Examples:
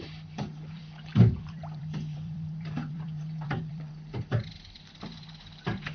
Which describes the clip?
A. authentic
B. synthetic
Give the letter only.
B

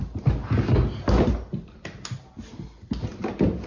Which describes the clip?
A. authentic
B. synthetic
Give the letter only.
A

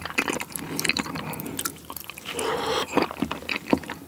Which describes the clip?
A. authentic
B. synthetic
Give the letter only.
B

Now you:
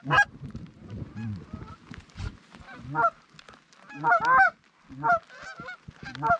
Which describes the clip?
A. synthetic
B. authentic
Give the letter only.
B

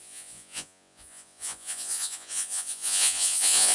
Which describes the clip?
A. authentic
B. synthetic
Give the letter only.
B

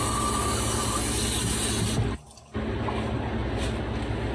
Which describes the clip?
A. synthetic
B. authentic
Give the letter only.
B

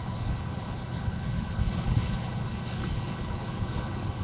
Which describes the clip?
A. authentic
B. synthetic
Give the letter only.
B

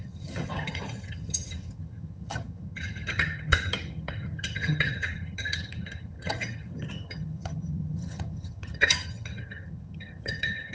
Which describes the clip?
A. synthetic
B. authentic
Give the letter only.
A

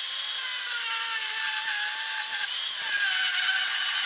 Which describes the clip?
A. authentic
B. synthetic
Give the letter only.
A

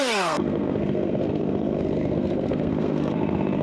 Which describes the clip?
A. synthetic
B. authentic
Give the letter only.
A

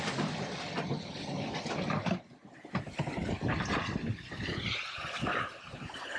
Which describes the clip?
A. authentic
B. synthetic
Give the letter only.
A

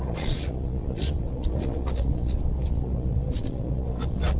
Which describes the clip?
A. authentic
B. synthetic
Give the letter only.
B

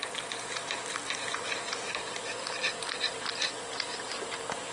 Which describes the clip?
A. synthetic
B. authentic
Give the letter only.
B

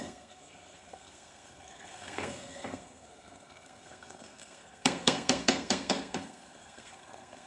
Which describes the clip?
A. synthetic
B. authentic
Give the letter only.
A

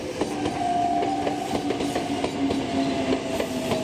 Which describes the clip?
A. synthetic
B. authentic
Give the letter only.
B